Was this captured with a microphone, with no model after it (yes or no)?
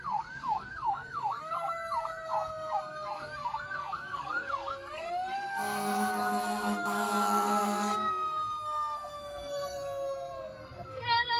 no